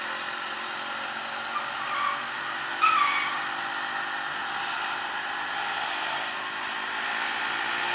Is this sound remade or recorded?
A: recorded